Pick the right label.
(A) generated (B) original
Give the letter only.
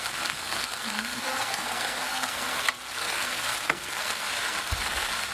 A